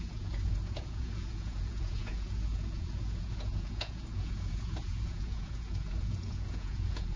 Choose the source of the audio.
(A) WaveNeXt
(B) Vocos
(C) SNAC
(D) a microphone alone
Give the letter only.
B